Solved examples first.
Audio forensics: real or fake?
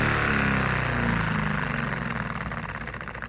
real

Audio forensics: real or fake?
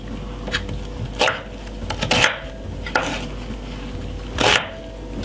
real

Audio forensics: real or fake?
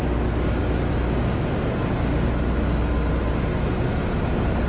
real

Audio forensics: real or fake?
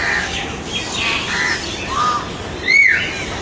real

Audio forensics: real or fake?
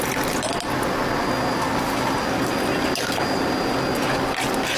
real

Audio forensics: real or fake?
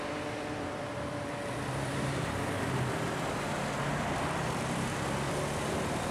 fake